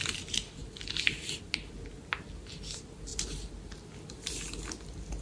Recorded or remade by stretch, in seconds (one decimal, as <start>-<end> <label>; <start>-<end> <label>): 0.0-5.2 recorded